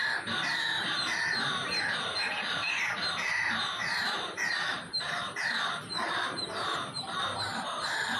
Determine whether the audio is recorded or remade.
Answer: remade